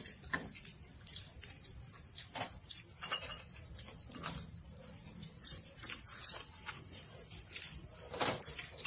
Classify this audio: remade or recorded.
remade